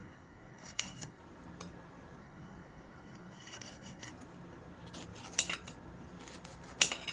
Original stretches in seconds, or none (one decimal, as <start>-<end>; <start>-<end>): 1.2-2.2; 4.1-7.1